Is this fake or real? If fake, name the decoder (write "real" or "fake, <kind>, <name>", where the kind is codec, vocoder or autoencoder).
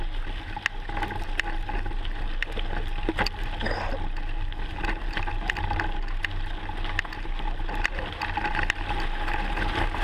real